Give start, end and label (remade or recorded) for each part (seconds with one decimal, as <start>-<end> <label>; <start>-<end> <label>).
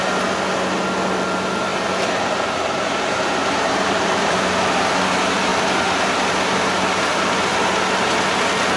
0.0-1.7 recorded; 1.7-5.0 remade; 5.0-8.8 recorded